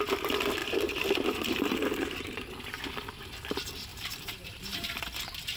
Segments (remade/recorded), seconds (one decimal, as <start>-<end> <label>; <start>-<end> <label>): 0.0-3.9 recorded; 3.9-5.0 remade; 5.0-5.6 recorded